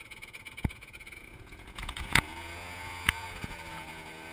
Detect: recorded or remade remade